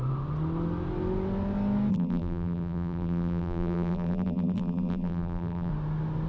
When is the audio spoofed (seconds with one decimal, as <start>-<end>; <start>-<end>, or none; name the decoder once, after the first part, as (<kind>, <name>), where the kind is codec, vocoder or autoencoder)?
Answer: 1.9-5.7 (vocoder, BigVGAN v2)